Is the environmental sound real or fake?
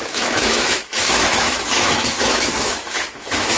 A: fake